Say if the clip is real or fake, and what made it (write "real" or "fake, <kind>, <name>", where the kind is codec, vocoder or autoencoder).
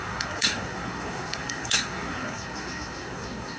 fake, codec, SNAC